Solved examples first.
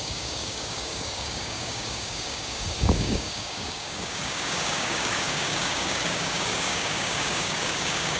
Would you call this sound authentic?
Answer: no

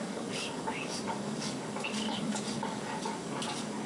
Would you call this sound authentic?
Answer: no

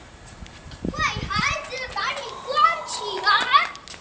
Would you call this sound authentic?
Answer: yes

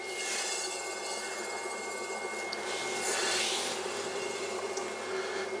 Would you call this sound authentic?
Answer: yes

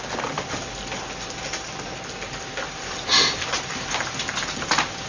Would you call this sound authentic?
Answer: yes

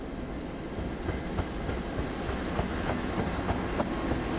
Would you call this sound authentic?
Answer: yes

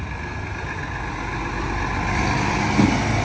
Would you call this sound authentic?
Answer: yes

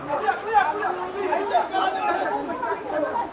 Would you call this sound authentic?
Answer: yes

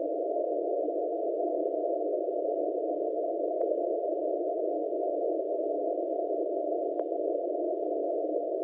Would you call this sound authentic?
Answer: no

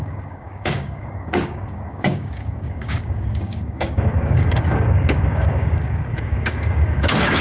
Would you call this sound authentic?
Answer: no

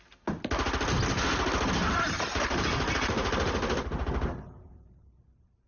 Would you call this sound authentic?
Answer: yes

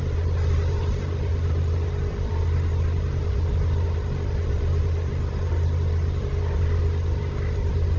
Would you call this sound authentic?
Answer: yes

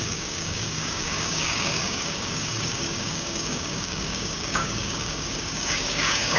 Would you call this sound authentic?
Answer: no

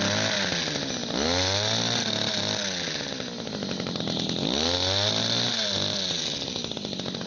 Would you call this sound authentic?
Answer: yes